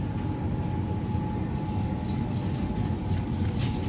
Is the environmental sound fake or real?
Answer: real